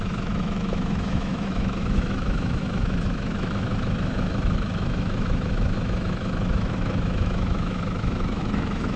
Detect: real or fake fake